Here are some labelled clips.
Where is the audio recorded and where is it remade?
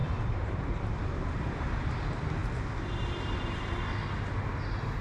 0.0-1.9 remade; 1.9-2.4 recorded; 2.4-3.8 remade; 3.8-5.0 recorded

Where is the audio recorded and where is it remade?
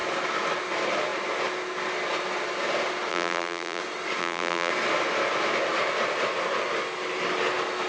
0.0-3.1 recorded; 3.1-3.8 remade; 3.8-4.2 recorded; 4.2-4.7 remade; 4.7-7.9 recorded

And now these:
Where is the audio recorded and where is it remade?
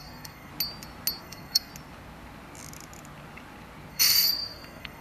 0.0-0.5 remade; 0.5-1.2 recorded; 1.2-1.7 remade; 1.7-3.9 recorded; 3.9-5.0 remade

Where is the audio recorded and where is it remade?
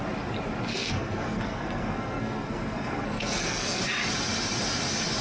0.0-0.7 recorded; 0.7-3.8 remade; 3.8-5.2 recorded